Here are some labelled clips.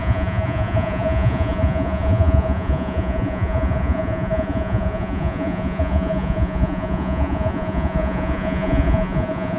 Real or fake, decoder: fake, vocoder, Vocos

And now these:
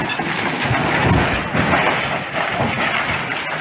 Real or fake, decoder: real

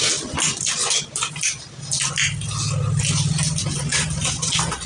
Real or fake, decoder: real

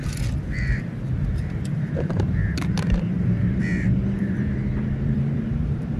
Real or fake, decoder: fake, vocoder, BigVGAN v2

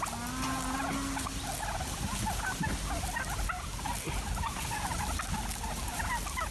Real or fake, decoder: real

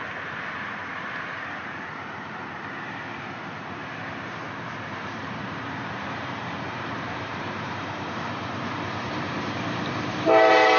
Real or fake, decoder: fake, vocoder, BigVGAN v2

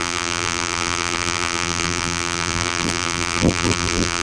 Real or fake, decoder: fake, vocoder, BigVGAN v2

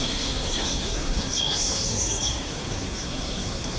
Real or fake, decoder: fake, codec, SNAC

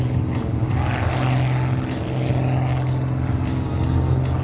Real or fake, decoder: real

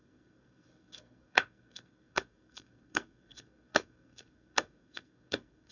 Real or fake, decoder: fake, codec, SNAC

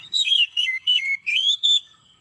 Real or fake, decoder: fake, codec, SNAC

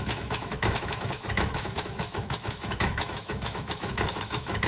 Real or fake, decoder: fake, autoencoder, DAC-VAE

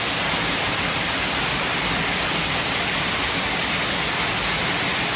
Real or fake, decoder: real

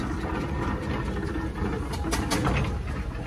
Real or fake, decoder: real